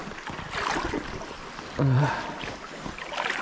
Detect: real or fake real